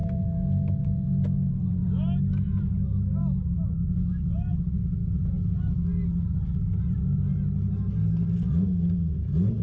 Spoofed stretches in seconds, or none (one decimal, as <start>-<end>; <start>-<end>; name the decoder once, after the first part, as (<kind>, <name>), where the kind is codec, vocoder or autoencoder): 0.0-1.5 (autoencoder, DAC-VAE); 3.2-4.3